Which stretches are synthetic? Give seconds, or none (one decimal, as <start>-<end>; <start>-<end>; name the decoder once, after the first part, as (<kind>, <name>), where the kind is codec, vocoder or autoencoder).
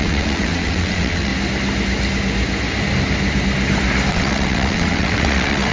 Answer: 0.0-1.3 (vocoder, WaveNeXt); 4.1-5.7